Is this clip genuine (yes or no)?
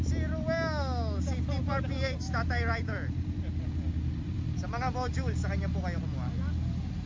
yes